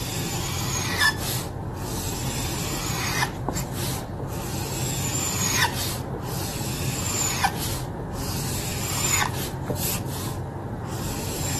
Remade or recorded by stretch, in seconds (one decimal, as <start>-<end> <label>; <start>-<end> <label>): 0.0-10.6 recorded; 10.6-11.6 remade